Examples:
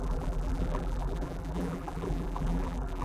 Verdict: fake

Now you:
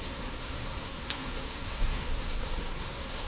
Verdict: fake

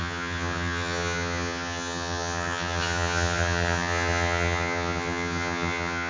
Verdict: fake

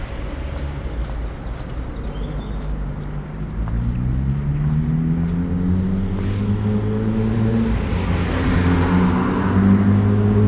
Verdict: real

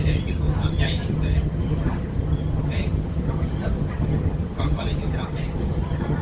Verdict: fake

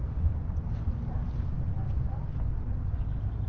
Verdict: real